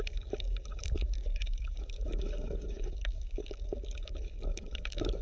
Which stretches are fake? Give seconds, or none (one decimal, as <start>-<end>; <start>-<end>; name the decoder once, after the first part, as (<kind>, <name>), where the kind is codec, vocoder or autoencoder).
0.0-5.2 (codec, DAC)